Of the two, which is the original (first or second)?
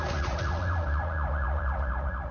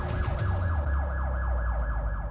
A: second